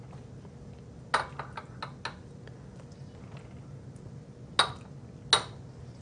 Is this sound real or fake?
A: real